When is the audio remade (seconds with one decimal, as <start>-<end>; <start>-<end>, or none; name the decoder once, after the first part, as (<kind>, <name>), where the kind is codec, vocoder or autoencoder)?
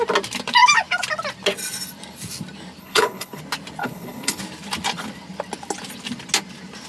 2.8-3.4 (codec, HILCodec); 3.8-4.4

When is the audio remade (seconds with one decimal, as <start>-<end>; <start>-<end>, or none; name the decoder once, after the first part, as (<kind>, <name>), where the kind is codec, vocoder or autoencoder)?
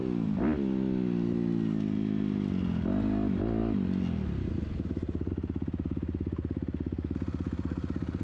none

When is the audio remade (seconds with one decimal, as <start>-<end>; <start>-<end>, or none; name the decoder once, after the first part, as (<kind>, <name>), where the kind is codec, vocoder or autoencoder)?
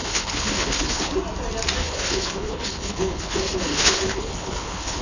0.0-1.1 (codec, HILCodec); 1.8-5.0